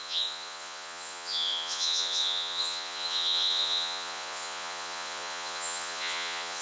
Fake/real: fake